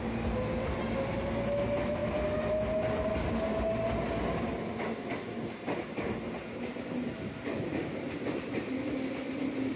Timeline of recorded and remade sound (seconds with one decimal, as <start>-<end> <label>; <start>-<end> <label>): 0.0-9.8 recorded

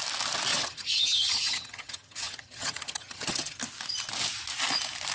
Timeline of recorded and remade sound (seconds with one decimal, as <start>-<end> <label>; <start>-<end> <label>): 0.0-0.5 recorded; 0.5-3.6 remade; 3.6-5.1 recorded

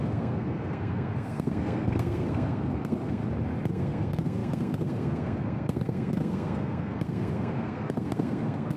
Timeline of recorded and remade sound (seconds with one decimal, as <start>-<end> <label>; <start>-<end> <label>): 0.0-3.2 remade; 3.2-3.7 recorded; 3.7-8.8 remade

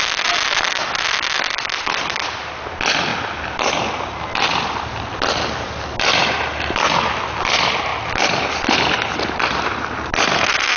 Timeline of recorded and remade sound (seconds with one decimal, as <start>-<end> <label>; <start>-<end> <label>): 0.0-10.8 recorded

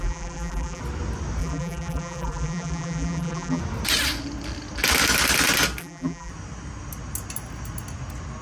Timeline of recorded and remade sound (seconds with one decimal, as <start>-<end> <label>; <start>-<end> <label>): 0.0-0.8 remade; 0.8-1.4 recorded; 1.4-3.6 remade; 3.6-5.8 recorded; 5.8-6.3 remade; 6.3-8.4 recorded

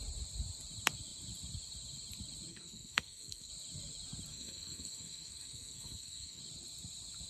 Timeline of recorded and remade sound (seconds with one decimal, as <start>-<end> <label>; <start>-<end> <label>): 0.0-2.5 recorded; 2.5-3.5 remade; 3.5-4.3 recorded; 4.3-6.4 remade; 6.4-7.3 recorded